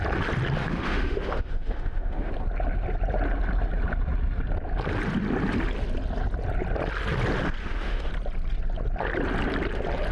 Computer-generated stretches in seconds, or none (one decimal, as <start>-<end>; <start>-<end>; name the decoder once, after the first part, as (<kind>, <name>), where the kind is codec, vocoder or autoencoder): 0.6-2.3 (autoencoder, DAC-VAE); 7.6-8.1